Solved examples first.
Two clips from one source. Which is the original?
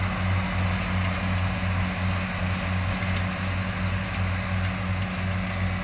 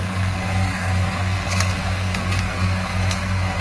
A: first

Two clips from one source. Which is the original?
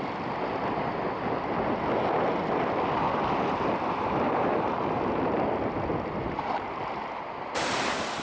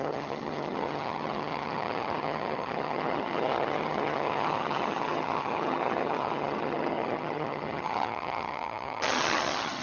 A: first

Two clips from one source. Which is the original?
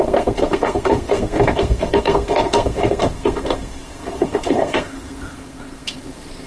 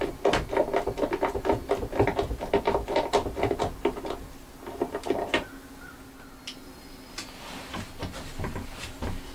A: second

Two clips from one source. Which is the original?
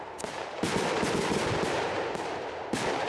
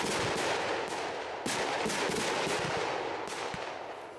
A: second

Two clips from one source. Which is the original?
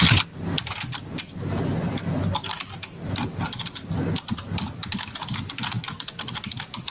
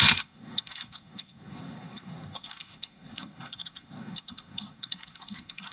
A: first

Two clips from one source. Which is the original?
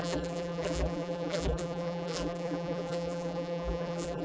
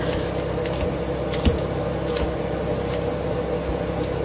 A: second